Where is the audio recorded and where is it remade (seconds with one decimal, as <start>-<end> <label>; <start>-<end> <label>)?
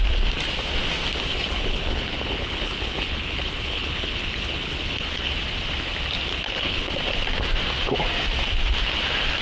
0.0-1.3 recorded; 1.3-5.3 remade; 5.3-6.3 recorded; 6.3-6.9 remade; 6.9-9.4 recorded